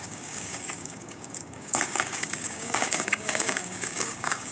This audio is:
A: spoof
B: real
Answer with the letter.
A